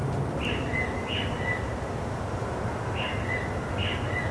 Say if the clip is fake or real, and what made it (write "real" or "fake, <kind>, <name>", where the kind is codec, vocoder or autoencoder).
real